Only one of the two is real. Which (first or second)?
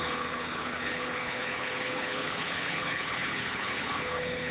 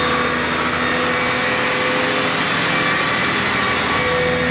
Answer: second